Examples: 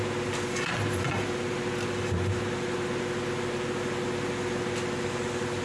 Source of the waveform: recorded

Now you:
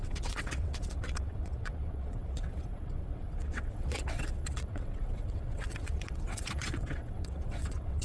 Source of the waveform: remade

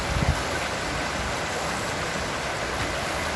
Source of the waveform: recorded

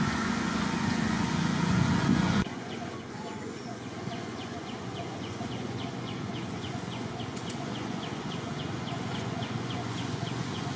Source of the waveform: remade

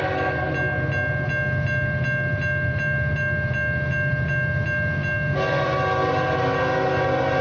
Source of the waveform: recorded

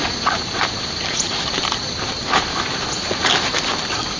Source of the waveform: remade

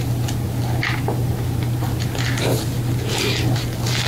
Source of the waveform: recorded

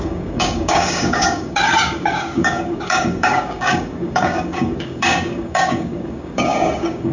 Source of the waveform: remade